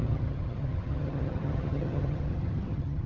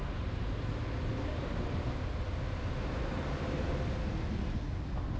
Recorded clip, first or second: second